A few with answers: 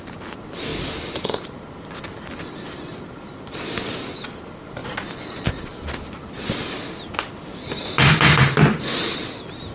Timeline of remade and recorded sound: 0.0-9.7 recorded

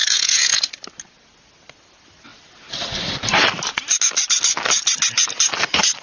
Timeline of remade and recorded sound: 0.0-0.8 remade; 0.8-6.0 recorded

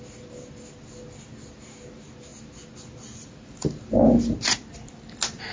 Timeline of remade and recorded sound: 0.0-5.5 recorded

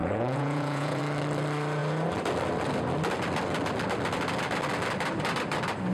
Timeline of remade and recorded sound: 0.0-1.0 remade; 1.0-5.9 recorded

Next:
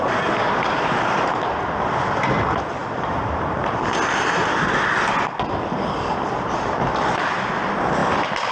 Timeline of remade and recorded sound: 0.0-8.5 recorded

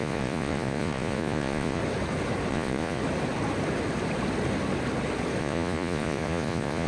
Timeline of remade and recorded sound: 0.0-1.8 remade; 1.8-2.5 recorded; 2.5-3.0 remade; 3.0-5.4 recorded; 5.4-6.9 remade

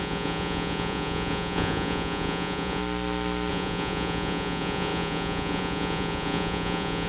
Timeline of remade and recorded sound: 0.0-2.8 remade; 2.8-3.5 recorded; 3.5-7.1 remade

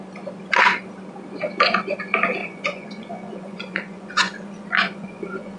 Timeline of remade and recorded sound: 0.0-2.4 recorded; 2.4-5.6 remade